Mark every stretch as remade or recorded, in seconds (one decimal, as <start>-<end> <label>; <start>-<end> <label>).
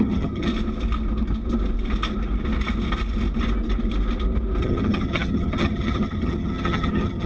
0.0-0.5 remade; 0.5-4.6 recorded; 4.6-7.3 remade